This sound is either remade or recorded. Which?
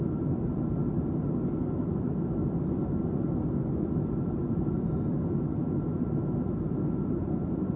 recorded